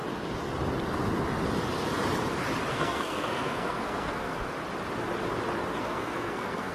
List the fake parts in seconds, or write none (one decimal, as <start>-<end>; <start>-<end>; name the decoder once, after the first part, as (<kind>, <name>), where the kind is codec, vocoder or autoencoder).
2.7-4.3 (codec, SNAC); 5.8-6.7